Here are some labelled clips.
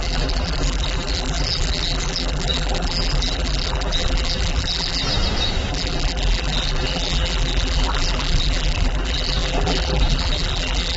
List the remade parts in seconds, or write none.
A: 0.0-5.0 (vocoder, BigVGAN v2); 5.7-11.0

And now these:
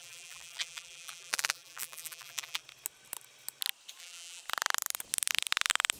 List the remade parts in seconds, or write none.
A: 0.0-2.6 (vocoder, BigVGAN v2); 4.0-4.4